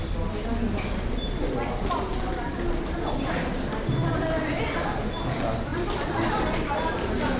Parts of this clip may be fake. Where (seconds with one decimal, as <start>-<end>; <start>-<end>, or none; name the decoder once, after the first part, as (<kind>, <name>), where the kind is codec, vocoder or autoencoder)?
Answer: none